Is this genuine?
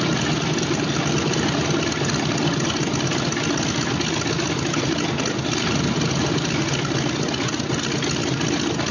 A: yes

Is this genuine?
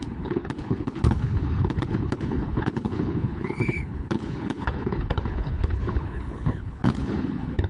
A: no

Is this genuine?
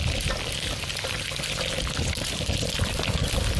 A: yes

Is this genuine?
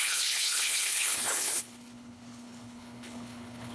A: no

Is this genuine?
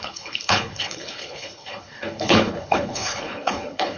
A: no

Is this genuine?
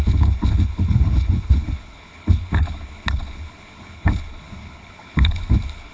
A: no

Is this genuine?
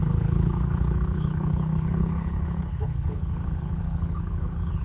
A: no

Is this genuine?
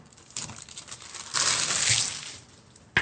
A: yes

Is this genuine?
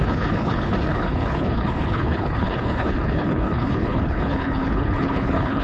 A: no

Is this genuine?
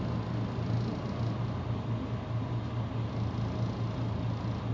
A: yes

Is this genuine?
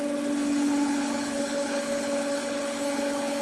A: no